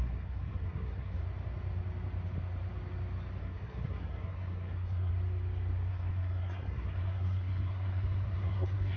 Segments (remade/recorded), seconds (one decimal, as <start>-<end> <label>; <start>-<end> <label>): 0.0-1.2 remade; 1.2-3.4 recorded; 3.4-5.1 remade; 5.1-5.9 recorded; 5.9-9.0 remade